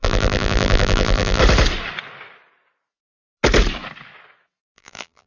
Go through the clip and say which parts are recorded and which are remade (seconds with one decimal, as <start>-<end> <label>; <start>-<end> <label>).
0.0-1.4 remade; 1.4-4.6 recorded; 4.6-5.3 remade